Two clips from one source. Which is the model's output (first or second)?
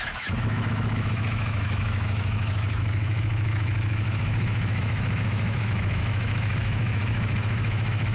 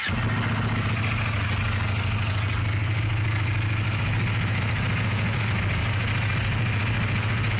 first